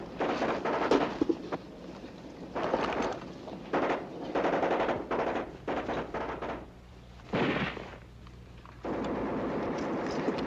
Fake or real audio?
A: real